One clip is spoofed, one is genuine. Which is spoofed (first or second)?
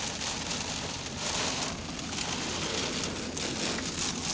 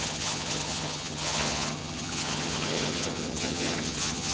second